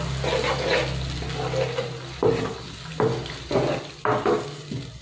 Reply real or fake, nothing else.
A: real